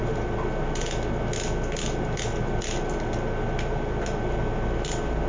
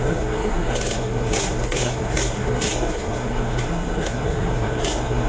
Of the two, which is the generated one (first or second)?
second